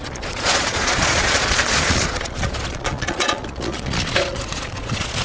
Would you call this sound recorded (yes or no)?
no